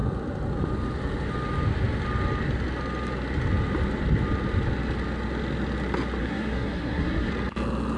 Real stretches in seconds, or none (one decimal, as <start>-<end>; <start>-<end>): 0.0-6.2; 7.3-8.0